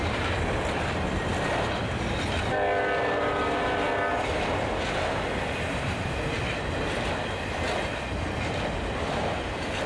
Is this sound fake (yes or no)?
no